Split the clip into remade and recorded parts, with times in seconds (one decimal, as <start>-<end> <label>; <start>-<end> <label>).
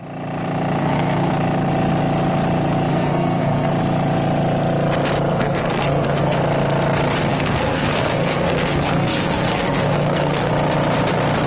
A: 0.0-0.8 recorded; 0.8-1.3 remade; 1.3-2.9 recorded; 2.9-3.7 remade; 3.7-5.3 recorded; 5.3-6.4 remade; 6.4-7.3 recorded; 7.3-10.5 remade; 10.5-11.5 recorded